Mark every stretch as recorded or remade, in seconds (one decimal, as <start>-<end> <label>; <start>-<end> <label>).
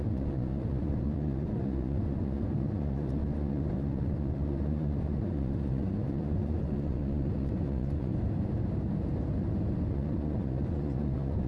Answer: 0.0-8.1 remade; 8.1-9.9 recorded; 9.9-11.5 remade